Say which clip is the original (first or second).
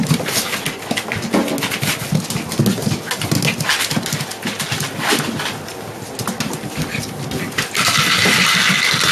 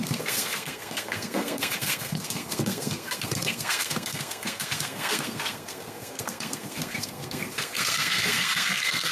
first